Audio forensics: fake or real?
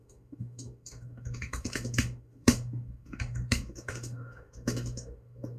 fake